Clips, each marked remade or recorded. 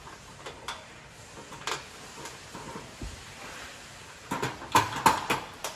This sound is recorded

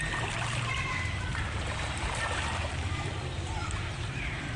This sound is remade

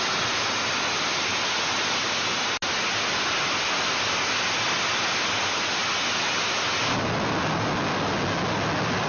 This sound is recorded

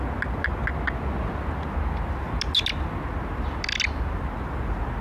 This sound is recorded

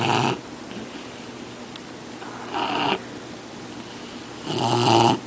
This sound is recorded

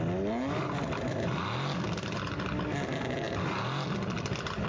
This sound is recorded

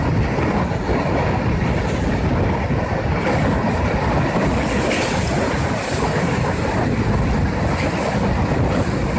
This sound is recorded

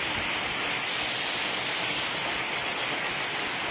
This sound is recorded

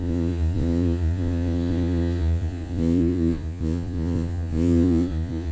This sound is remade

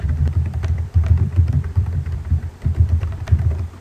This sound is remade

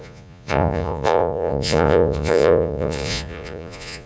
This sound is remade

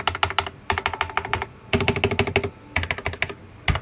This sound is recorded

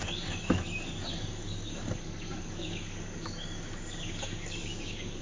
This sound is remade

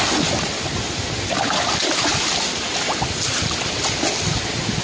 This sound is recorded